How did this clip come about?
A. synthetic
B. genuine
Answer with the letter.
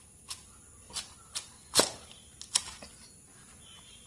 B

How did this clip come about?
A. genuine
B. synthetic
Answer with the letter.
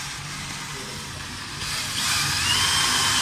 A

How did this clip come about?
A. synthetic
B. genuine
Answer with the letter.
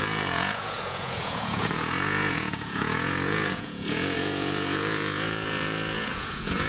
A